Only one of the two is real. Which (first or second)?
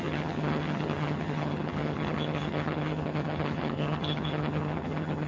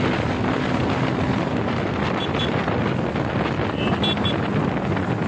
second